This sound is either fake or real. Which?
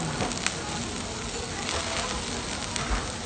real